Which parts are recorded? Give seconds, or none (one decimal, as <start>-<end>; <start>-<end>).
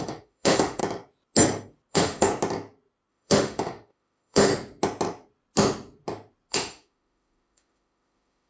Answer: 0.8-1.9; 2.3-3.1; 4.5-6.5